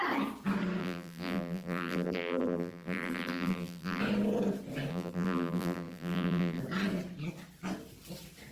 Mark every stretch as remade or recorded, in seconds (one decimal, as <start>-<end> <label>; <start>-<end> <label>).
0.0-0.8 recorded; 0.8-4.0 remade; 4.0-4.9 recorded; 4.9-6.6 remade; 6.6-8.5 recorded